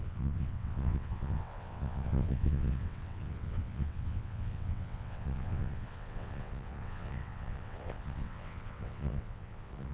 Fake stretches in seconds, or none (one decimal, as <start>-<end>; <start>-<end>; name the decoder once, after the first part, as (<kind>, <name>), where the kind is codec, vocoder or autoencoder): 0.0-9.9 (vocoder, WaveNeXt)